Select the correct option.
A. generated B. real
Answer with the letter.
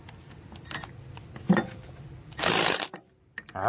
B